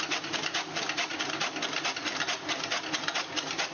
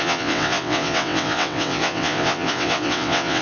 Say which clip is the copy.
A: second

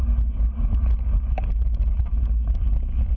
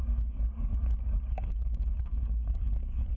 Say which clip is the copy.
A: second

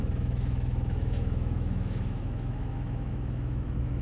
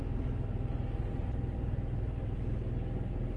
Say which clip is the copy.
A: first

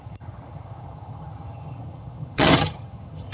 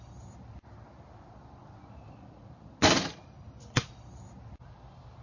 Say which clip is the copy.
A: first